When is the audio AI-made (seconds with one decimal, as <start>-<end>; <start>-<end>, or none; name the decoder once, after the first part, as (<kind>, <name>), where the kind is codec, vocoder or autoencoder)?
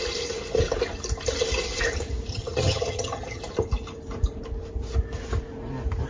2.3-3.4 (vocoder, HiFi-GAN)